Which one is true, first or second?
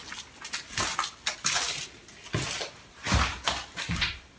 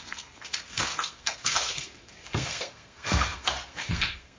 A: first